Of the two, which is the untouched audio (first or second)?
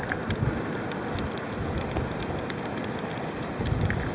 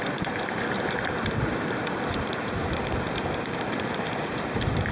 first